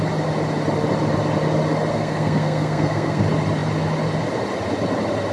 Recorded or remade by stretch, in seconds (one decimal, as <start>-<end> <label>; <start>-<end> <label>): 0.0-1.9 recorded; 1.9-3.2 remade; 3.2-5.3 recorded